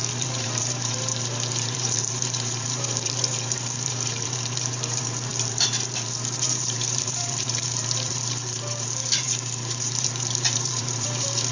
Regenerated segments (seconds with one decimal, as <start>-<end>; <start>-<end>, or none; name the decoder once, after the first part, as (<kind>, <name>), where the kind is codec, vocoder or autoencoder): 0.0-11.5 (vocoder, BigVGAN v2)